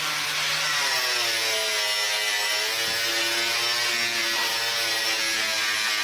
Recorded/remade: recorded